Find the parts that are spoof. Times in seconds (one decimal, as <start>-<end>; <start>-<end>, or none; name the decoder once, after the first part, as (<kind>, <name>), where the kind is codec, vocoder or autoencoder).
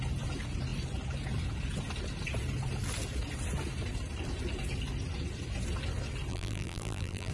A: 6.3-7.3 (vocoder, BigVGAN v2)